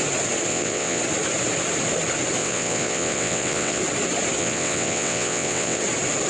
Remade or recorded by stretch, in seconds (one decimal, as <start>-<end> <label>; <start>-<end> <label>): 0.0-0.5 recorded; 0.5-1.0 remade; 1.0-2.4 recorded; 2.4-3.8 remade; 3.8-4.4 recorded; 4.4-5.8 remade; 5.8-6.3 recorded